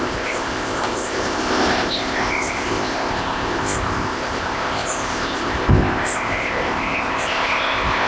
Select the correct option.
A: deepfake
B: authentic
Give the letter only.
A